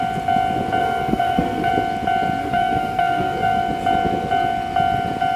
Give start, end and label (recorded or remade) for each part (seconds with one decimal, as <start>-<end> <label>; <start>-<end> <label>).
0.0-0.8 recorded; 0.8-1.7 remade; 1.7-2.4 recorded; 2.4-3.6 remade; 3.6-5.4 recorded